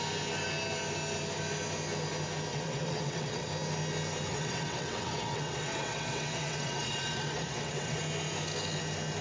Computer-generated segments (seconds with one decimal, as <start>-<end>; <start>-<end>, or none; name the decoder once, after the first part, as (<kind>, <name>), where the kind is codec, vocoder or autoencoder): 2.5-3.5 (vocoder, WaveNeXt); 4.3-8.0